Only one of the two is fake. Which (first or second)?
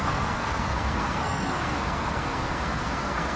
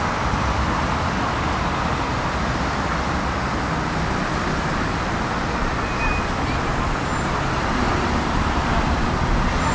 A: first